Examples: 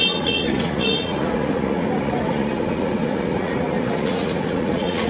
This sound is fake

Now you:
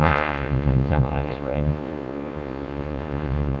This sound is fake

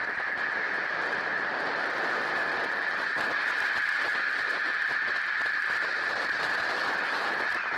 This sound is real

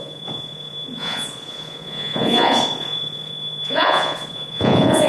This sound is fake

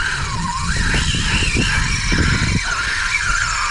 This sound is real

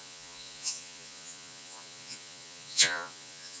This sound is fake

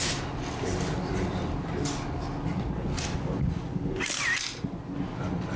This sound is real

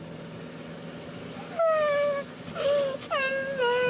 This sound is real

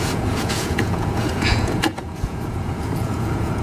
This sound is fake